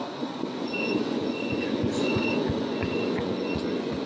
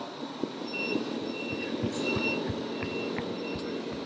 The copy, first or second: first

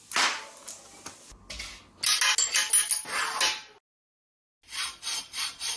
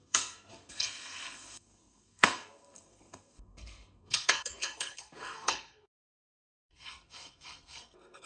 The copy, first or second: second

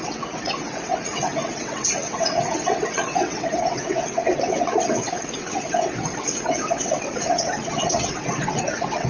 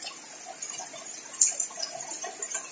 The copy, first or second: first